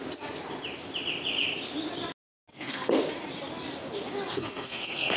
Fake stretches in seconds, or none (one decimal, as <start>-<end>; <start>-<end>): 2.5-3.0; 4.3-5.2